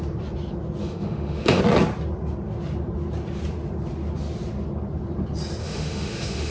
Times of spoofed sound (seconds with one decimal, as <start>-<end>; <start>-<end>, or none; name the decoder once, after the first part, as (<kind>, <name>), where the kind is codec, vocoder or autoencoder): 0.8-1.6 (autoencoder, DAC-VAE); 5.6-6.5